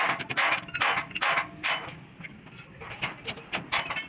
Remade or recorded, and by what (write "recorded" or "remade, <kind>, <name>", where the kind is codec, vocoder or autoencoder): recorded